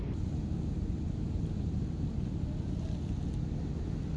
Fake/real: real